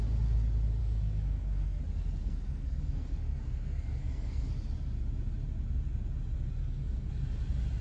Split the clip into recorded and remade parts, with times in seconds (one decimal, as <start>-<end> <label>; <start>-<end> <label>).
0.0-0.8 recorded; 0.8-1.8 remade; 1.8-2.2 recorded; 2.2-4.5 remade; 4.5-6.6 recorded; 6.6-7.1 remade; 7.1-7.8 recorded